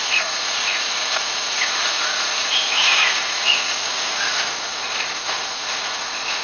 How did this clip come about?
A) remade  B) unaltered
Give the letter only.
A